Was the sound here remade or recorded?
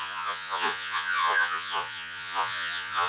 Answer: remade